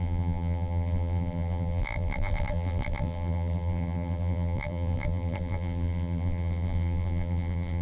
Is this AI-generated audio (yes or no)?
yes